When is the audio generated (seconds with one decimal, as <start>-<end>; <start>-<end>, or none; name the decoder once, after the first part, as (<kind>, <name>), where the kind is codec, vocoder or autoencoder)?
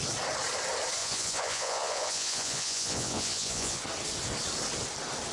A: 1.0-3.8 (vocoder, Vocos)